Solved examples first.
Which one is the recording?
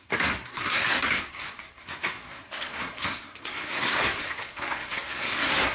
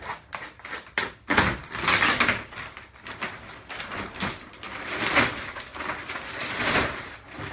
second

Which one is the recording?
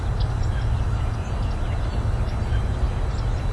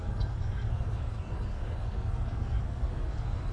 first